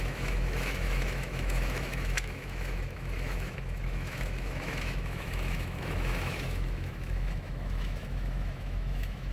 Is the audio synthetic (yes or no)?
yes